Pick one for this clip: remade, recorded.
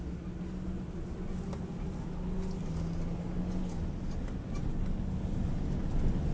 recorded